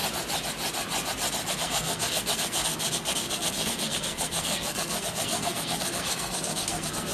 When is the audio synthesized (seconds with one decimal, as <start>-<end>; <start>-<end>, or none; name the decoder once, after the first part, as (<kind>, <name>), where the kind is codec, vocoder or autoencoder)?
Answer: 1.5-7.1 (codec, SNAC)